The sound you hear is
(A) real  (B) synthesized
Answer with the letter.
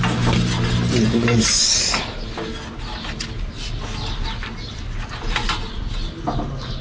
A